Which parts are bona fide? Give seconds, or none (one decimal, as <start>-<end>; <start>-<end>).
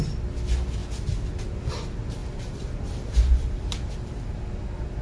0.0-2.2; 4.4-5.0